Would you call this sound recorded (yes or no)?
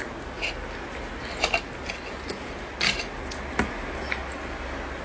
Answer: yes